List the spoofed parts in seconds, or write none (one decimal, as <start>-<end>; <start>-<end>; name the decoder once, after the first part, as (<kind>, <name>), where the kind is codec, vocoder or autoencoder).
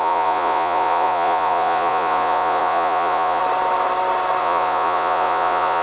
0.0-3.4 (vocoder, Vocos); 4.4-5.8